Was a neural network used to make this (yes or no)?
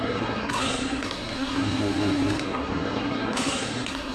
yes